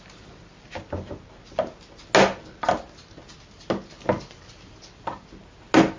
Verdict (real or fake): real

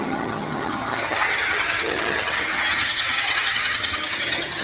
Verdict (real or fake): fake